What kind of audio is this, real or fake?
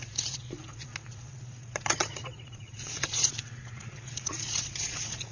fake